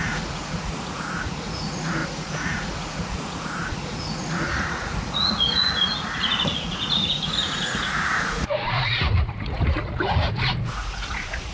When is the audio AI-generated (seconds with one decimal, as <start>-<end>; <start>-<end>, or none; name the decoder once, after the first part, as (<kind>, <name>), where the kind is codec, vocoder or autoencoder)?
0.0-11.5 (vocoder, Vocos)